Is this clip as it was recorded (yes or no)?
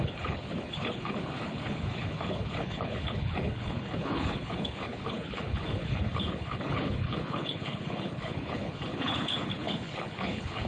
no